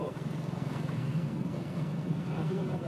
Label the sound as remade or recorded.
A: remade